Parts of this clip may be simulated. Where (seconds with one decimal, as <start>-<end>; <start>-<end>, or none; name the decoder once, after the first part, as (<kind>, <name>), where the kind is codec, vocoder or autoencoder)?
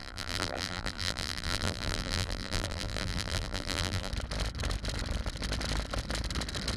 0.0-4.1 (vocoder, BigVGAN v2)